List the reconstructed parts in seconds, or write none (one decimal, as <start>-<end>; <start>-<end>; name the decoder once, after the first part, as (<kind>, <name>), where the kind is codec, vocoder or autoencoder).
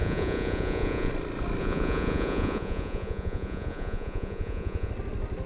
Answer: 0.0-1.1 (vocoder, Vocos); 1.6-4.9